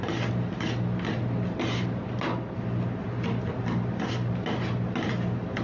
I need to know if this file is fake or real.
real